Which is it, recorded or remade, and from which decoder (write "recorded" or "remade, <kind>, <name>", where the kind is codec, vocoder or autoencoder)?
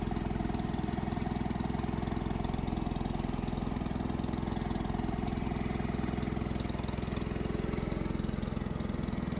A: recorded